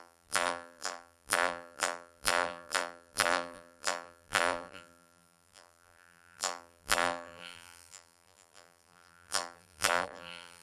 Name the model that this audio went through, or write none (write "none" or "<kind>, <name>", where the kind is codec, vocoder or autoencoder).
vocoder, BigVGAN v2